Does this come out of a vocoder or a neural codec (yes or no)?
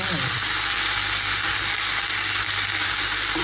no